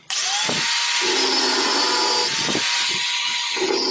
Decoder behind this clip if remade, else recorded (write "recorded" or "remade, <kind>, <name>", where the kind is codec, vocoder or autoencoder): recorded